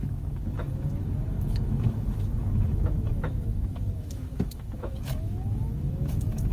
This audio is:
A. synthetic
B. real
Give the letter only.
A